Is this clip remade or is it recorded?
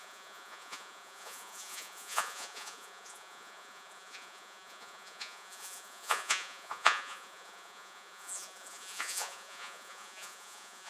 remade